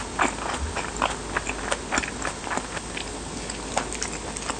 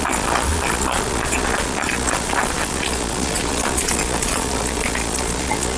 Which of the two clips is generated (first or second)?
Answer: second